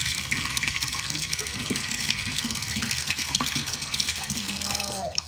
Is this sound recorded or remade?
remade